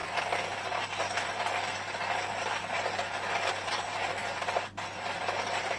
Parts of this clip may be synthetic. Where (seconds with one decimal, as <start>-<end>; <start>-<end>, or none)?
none